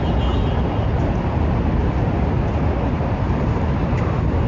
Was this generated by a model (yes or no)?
no